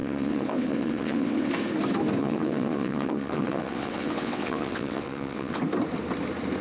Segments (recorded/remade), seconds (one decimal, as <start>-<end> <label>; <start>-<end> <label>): 0.0-1.5 remade; 1.5-2.2 recorded; 2.2-5.6 remade; 5.6-6.6 recorded